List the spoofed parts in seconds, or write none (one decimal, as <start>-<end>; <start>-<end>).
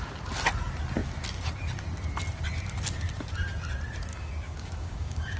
4.1-5.4